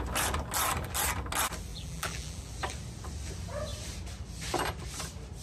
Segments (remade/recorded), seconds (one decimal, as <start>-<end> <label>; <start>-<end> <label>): 0.0-1.7 recorded; 1.7-2.5 remade; 2.5-5.4 recorded